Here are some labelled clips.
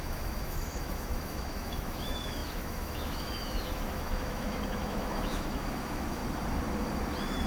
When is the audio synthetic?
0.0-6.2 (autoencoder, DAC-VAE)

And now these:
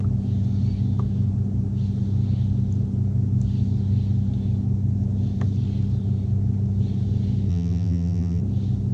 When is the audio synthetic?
7.5-8.4 (vocoder, BigVGAN v2)

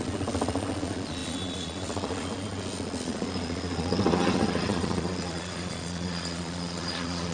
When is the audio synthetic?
0.0-7.3 (vocoder, Vocos)

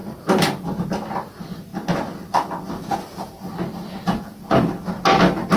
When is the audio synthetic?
none

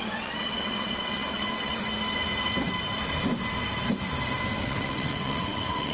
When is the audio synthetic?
0.0-1.8 (vocoder, WaveNeXt); 4.6-5.9

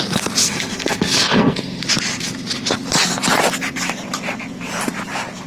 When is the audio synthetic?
0.4-1.8 (codec, SNAC)

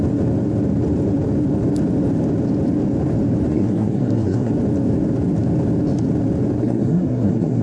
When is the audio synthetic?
3.5-4.5 (codec, SNAC); 6.6-7.6